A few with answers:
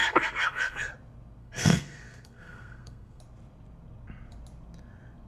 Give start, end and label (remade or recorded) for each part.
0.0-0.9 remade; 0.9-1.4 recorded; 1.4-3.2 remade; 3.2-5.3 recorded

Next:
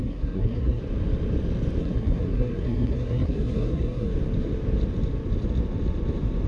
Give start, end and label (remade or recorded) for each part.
0.0-0.8 remade; 0.8-1.8 recorded; 1.8-4.1 remade; 4.1-6.5 recorded

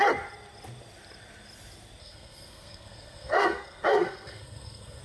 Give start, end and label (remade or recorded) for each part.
0.0-2.0 recorded; 2.0-5.0 remade

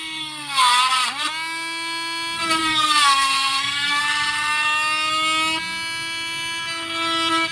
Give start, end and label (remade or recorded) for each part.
0.0-0.7 remade; 0.7-2.6 recorded; 2.6-4.0 remade; 4.0-7.5 recorded

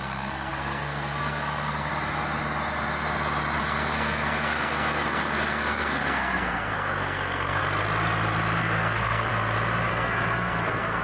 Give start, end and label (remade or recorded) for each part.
0.0-1.9 remade; 1.9-3.6 recorded; 3.6-7.6 remade; 7.6-8.6 recorded; 8.6-9.3 remade; 9.3-9.9 recorded; 9.9-11.0 remade

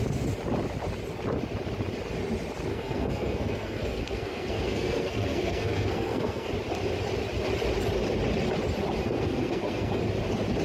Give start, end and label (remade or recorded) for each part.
0.0-2.7 recorded; 2.7-6.5 remade; 6.5-9.0 recorded; 9.0-10.0 remade; 10.0-10.6 recorded

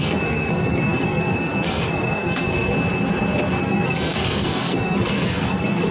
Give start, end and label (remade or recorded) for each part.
0.0-2.7 remade; 2.7-3.6 recorded; 3.6-5.9 remade

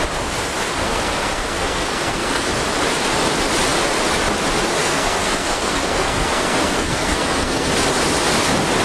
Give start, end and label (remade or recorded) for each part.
0.0-0.8 recorded; 0.8-2.5 remade; 2.5-4.8 recorded; 4.8-7.7 remade; 7.7-8.8 recorded